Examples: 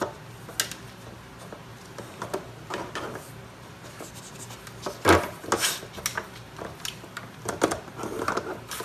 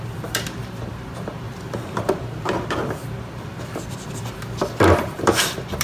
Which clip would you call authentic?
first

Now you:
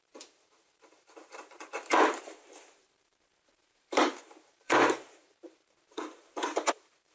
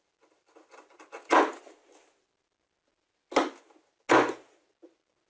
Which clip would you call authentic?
second